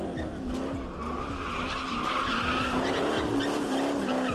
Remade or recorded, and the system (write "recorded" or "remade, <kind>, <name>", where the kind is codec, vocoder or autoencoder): recorded